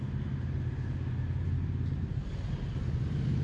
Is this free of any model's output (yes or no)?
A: yes